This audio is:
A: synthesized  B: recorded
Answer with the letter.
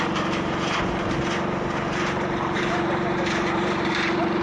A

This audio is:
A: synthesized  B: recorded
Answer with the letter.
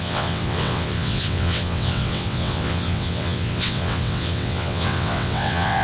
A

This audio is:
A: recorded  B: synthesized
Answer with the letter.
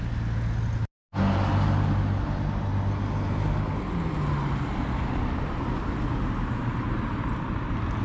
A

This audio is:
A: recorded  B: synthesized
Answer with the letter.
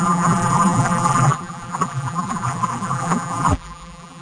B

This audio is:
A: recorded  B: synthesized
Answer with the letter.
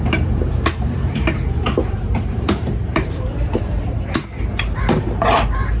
B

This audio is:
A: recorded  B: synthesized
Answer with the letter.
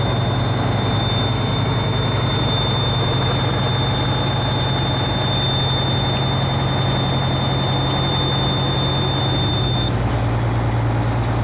A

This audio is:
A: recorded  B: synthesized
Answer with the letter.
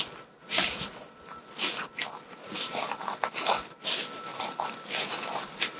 A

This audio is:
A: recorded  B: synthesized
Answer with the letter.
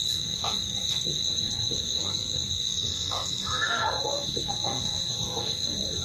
B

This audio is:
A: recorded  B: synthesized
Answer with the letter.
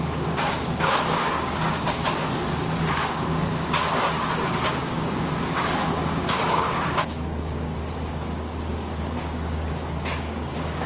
B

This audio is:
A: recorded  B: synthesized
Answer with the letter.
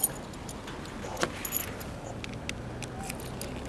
A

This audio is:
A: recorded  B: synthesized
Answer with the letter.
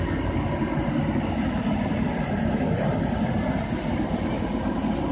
A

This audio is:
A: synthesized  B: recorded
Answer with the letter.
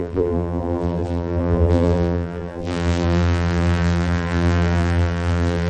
A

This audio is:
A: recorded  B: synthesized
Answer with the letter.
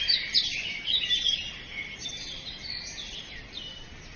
A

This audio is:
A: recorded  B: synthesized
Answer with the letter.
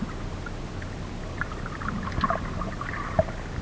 A